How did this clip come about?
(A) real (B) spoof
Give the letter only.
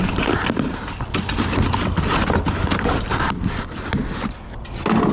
A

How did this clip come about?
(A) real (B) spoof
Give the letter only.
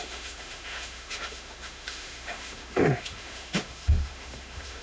B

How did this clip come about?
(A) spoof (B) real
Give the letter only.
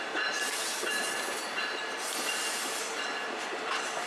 B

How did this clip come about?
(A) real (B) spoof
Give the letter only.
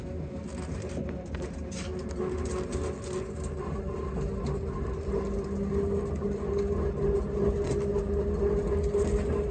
A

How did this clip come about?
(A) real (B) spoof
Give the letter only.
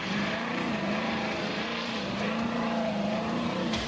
B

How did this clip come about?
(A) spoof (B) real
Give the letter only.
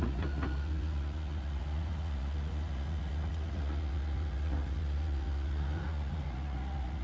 A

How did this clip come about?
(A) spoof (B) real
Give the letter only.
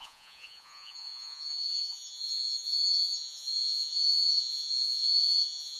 A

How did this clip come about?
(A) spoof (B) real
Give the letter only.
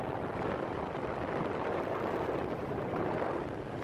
B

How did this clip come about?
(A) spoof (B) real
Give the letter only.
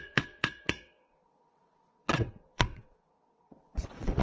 A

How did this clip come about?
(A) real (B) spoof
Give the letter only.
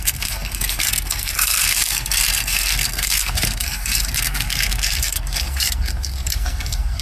B